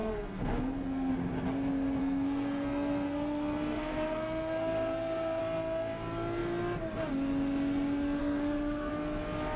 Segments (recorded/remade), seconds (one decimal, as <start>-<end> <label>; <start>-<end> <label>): 0.0-1.1 remade; 1.1-2.0 recorded; 2.0-5.4 remade; 5.4-8.2 recorded; 8.2-8.9 remade; 8.9-9.6 recorded